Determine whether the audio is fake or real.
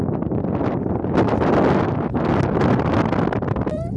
fake